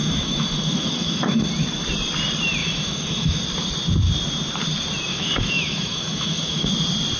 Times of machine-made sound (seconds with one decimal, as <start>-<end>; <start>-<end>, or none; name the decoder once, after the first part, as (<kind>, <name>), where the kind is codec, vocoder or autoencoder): 0.0-1.5 (autoencoder, DAC-VAE); 2.6-3.4; 5.1-6.7